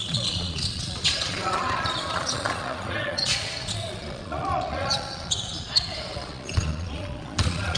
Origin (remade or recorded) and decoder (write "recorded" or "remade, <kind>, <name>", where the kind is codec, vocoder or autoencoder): remade, vocoder, Vocos